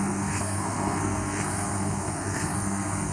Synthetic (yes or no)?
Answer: yes